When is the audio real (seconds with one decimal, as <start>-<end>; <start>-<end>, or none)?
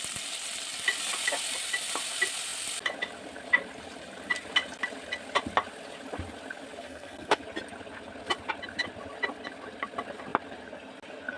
0.0-6.8; 7.4-11.4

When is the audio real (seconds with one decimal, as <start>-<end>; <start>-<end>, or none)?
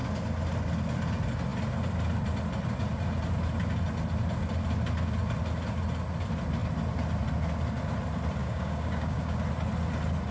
0.0-8.4; 9.4-10.3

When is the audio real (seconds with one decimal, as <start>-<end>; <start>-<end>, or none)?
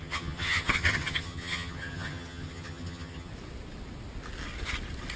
3.3-5.2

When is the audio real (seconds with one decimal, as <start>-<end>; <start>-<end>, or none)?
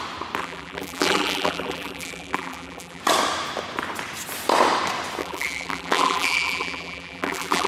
0.0-0.4; 3.0-5.2